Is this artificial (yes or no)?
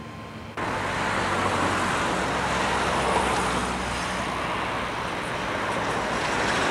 no